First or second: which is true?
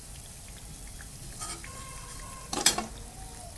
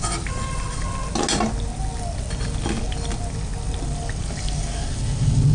second